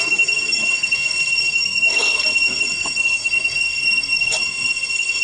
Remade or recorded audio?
remade